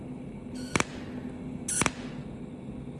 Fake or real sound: real